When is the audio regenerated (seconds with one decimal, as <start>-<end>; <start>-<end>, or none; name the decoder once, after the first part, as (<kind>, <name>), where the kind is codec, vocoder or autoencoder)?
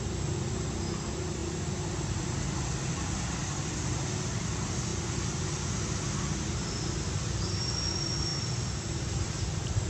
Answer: none